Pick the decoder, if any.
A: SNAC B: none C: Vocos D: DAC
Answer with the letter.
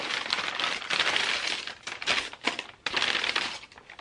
B